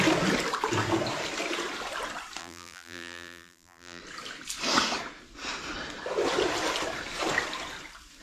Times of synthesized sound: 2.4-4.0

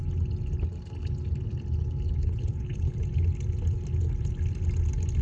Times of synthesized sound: 2.2-3.0